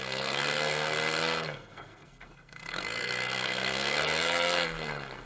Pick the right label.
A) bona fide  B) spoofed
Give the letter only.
B